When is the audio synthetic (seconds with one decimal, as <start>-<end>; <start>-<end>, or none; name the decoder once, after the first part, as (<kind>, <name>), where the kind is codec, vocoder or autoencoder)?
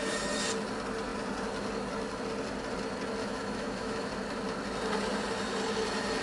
3.2-4.1 (autoencoder, DAC-VAE)